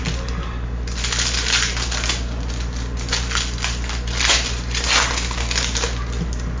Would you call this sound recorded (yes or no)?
yes